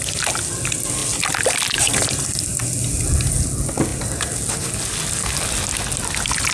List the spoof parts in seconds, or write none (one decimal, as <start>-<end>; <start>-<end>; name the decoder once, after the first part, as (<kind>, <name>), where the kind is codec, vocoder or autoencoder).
none